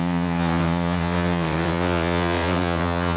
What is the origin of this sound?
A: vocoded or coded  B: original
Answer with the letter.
A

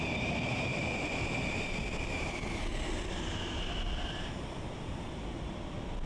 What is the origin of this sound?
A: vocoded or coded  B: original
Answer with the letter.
B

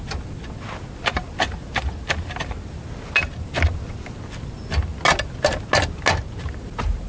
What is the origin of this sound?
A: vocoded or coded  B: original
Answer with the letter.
B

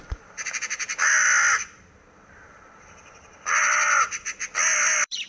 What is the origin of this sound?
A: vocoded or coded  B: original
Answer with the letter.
A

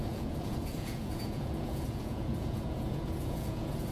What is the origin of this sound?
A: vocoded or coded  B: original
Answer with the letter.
A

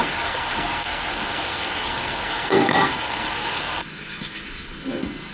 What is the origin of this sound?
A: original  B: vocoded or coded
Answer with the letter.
B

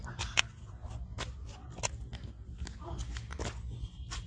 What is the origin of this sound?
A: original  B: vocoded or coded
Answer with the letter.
A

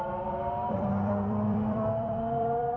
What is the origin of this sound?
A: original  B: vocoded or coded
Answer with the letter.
B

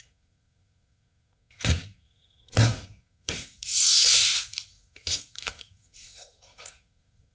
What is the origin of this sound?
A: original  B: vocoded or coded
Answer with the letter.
B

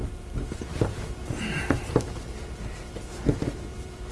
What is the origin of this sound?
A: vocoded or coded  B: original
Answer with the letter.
A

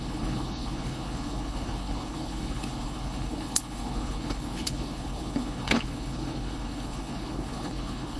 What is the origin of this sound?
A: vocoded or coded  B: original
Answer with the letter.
A